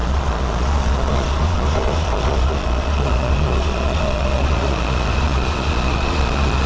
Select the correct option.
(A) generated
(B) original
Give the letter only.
A